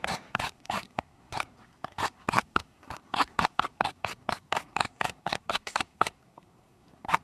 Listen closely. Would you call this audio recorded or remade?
remade